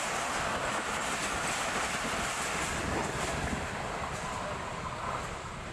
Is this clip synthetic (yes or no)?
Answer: yes